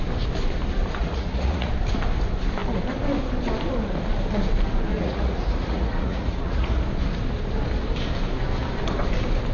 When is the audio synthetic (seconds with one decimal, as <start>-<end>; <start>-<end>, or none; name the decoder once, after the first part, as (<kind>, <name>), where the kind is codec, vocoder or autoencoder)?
1.0-1.7 (vocoder, Vocos); 4.9-6.8